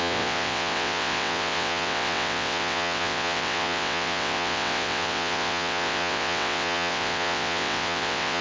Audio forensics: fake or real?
fake